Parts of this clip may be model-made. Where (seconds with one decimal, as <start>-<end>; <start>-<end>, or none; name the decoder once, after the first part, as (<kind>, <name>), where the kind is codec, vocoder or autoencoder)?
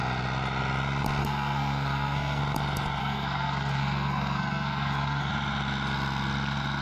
1.2-2.4 (codec, SNAC); 3.0-5.3